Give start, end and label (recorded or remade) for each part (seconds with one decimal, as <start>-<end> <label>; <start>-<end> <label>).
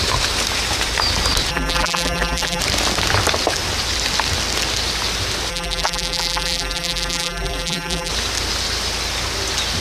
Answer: 0.0-1.5 recorded; 1.5-2.6 remade; 2.6-5.5 recorded; 5.5-8.1 remade; 8.1-9.8 recorded